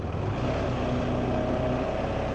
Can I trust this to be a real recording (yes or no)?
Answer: yes